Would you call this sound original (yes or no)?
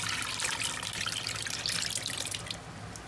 yes